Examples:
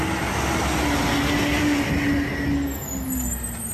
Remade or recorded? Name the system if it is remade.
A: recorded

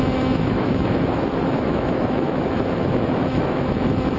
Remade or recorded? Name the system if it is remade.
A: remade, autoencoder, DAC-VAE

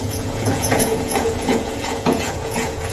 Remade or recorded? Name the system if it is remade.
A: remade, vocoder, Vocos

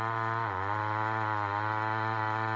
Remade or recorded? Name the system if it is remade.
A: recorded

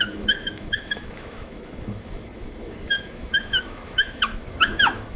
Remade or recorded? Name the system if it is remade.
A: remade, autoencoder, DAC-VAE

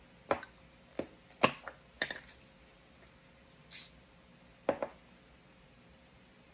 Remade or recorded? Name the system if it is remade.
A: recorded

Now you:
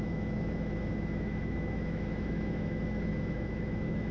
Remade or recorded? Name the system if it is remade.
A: remade, autoencoder, DAC-VAE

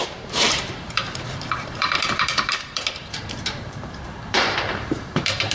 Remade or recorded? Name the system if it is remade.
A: remade, vocoder, BigVGAN v2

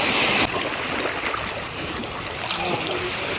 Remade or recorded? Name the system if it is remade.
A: recorded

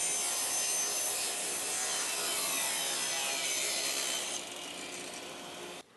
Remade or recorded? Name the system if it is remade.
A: recorded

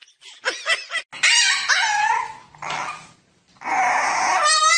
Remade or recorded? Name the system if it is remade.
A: recorded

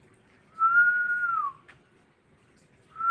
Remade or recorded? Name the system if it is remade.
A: recorded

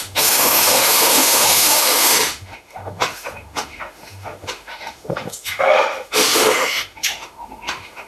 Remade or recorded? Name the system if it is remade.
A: remade, autoencoder, DAC-VAE